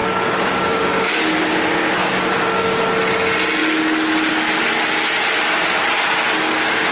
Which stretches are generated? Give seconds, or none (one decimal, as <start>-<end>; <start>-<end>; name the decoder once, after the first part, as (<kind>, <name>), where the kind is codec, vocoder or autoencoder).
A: 0.0-1.2 (codec, DAC); 2.0-2.8